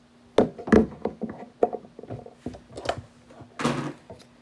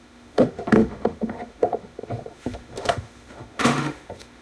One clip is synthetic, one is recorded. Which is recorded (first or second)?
first